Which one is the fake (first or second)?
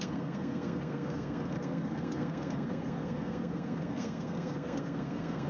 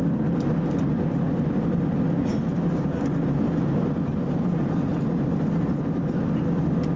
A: first